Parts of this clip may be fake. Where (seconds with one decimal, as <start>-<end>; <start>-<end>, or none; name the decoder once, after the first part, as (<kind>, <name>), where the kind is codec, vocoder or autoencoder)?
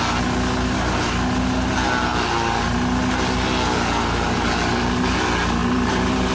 5.6-6.3 (vocoder, BigVGAN v2)